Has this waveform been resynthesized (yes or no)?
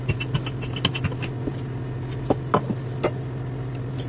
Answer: no